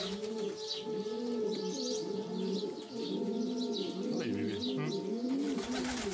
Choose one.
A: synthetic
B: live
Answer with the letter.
B